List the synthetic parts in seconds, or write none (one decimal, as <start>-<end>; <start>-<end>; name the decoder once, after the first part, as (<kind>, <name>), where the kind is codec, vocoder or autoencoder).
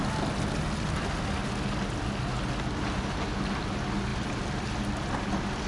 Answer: 4.1-5.2 (vocoder, BigVGAN v2)